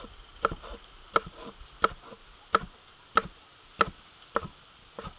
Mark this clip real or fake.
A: real